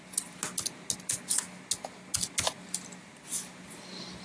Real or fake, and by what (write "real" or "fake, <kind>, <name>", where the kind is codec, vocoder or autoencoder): real